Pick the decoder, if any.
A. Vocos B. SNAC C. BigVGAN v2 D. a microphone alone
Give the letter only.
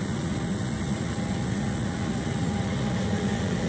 A